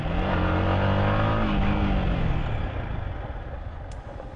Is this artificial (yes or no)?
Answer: no